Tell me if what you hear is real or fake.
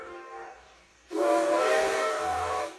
fake